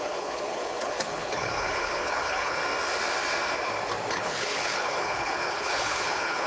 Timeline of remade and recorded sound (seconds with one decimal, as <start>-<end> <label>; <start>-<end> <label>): 0.0-2.6 remade; 2.6-4.1 recorded; 4.1-6.5 remade